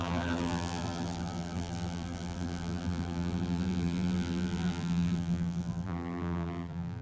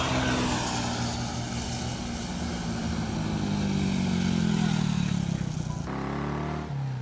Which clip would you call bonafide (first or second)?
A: second